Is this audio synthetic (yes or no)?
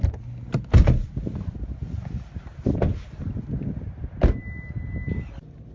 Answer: no